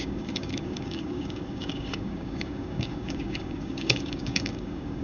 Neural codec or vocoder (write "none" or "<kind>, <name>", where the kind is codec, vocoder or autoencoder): codec, DAC